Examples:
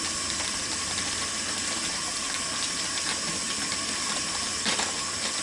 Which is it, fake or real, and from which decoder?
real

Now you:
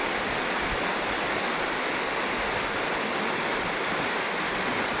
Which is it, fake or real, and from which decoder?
real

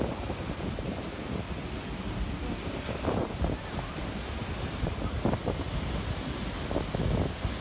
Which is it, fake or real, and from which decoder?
real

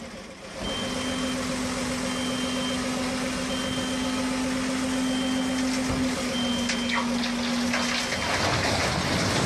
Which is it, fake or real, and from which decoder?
real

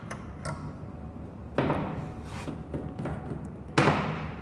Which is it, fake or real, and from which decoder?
real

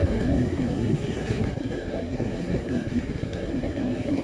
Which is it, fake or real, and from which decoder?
fake, codec, SNAC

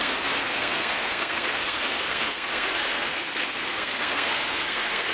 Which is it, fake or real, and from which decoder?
fake, codec, SNAC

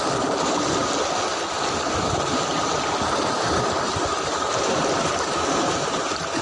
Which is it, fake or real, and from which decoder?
real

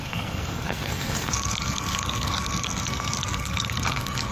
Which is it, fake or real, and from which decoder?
fake, codec, SNAC